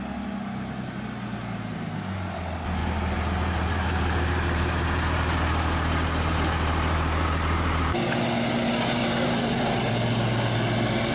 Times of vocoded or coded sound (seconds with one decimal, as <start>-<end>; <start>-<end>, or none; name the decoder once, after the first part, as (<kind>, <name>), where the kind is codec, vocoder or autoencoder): 2.8-8.0 (vocoder, BigVGAN v2); 9.0-9.9